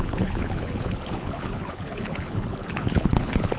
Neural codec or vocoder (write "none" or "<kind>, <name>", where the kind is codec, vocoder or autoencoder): codec, HILCodec